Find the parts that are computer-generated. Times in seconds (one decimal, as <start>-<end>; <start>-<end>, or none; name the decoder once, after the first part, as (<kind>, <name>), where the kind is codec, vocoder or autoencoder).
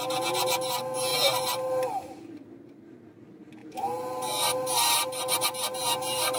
1.1-2.9 (vocoder, BigVGAN v2); 3.6-6.4